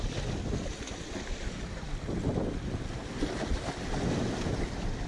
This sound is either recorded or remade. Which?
recorded